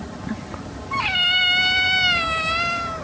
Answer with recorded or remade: recorded